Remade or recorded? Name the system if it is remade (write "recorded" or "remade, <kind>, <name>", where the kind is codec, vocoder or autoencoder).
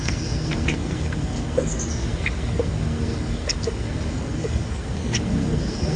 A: remade, codec, SNAC